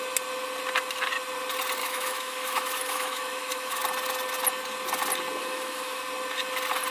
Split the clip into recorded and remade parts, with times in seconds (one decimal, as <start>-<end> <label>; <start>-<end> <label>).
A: 0.0-1.8 recorded; 1.8-3.8 remade; 3.8-5.4 recorded; 5.4-6.0 remade; 6.0-6.9 recorded